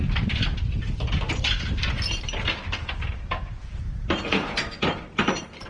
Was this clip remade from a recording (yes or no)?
no